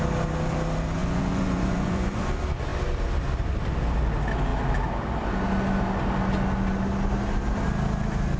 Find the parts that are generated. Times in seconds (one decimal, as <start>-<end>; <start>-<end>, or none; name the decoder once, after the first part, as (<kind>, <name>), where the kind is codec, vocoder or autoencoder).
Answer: 1.0-2.2 (vocoder, Vocos)